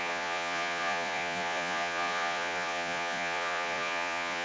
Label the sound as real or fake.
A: fake